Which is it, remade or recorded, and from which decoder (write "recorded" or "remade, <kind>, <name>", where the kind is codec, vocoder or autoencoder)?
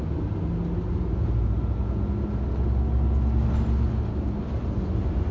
recorded